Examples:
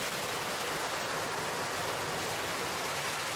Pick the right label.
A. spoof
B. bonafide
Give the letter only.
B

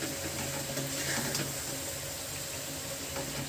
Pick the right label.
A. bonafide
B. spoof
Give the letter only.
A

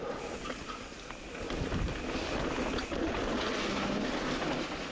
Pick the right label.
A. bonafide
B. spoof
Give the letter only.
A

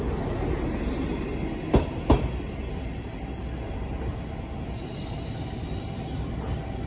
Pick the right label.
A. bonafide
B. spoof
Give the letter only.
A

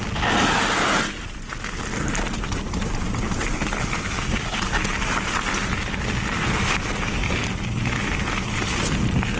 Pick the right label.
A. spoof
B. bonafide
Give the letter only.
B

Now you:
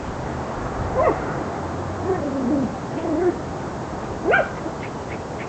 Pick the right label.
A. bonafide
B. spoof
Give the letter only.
A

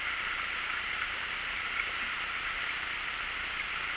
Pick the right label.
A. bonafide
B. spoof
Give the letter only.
A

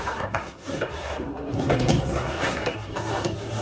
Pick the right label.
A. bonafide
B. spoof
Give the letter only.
B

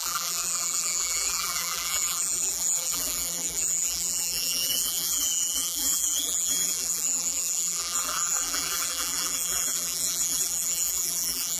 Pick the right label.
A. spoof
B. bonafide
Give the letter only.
A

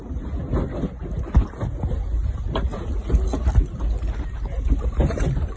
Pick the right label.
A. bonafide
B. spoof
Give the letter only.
A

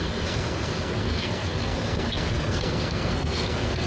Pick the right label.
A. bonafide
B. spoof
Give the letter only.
B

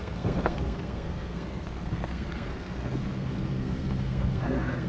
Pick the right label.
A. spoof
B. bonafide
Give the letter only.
A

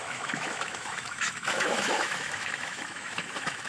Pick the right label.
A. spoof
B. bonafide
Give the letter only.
A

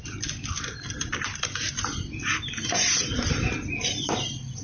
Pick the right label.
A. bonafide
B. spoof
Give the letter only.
A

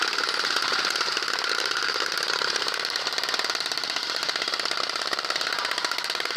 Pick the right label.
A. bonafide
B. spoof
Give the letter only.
B